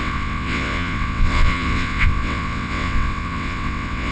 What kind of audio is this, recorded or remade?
remade